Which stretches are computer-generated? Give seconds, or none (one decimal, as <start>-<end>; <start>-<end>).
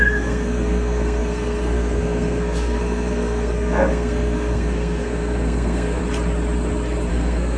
0.0-6.0; 7.1-7.6